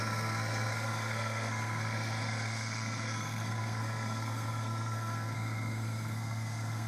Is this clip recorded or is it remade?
remade